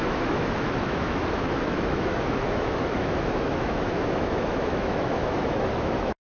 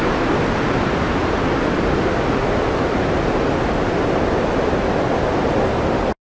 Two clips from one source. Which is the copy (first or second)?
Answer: first